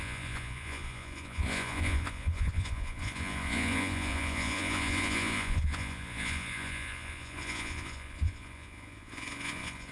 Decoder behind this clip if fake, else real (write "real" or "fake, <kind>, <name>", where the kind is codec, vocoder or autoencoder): fake, vocoder, Vocos